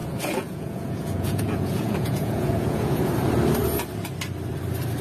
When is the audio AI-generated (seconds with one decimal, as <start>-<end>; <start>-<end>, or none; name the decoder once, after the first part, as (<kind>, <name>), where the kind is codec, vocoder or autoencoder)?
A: 0.0-3.0 (vocoder, Vocos)